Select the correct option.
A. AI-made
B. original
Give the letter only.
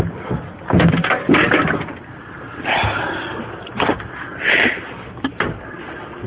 B